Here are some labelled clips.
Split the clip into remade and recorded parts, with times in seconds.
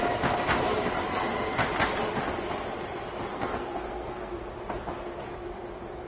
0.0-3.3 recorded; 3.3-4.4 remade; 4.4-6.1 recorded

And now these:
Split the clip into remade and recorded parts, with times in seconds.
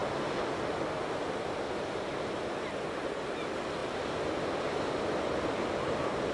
0.0-6.3 recorded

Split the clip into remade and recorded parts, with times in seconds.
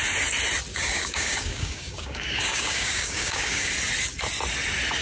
0.0-0.7 recorded; 0.7-3.7 remade; 3.7-5.0 recorded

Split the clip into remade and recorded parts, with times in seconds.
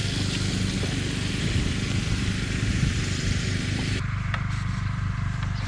0.0-1.3 recorded; 1.3-5.7 remade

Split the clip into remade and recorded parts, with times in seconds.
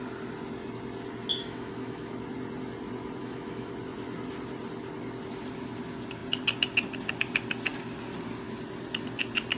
0.0-1.4 recorded; 1.4-2.2 remade; 2.2-3.2 recorded; 3.2-3.7 remade; 3.7-9.6 recorded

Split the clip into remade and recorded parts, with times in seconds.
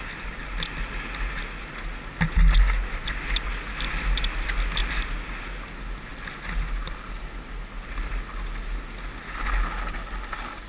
0.0-10.7 recorded